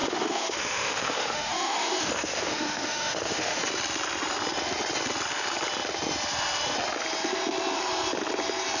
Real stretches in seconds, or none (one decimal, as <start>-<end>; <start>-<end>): 3.6-8.8